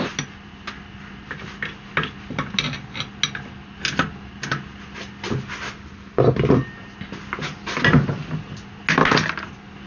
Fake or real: real